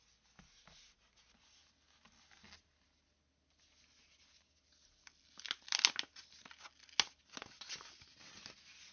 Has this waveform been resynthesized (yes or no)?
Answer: no